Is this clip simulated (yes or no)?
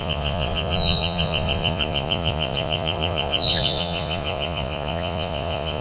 yes